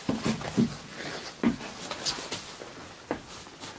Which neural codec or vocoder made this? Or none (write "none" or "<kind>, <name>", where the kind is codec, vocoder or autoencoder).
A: none